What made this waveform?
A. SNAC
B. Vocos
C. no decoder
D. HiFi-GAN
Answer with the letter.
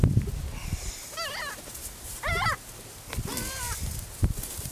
C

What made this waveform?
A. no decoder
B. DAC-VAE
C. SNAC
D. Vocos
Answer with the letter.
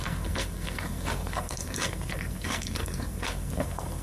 C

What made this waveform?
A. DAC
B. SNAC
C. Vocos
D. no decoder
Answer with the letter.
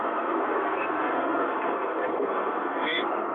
B